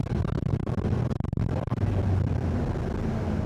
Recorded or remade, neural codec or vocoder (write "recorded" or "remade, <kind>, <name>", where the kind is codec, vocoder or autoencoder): recorded